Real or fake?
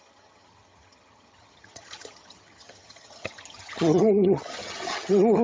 fake